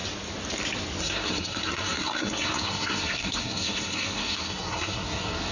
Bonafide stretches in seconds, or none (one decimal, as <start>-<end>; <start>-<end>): 0.0-1.0